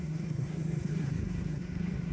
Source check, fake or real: fake